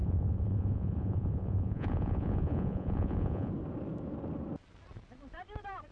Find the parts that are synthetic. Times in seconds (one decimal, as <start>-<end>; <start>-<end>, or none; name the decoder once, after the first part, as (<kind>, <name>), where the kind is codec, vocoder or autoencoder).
0.0-3.5 (vocoder, Vocos)